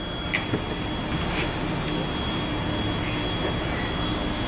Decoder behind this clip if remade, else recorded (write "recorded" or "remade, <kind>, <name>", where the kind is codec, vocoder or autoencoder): recorded